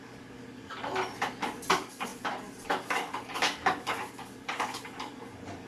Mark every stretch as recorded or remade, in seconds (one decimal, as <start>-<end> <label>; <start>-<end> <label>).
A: 0.0-0.8 remade; 0.8-1.7 recorded; 1.7-5.7 remade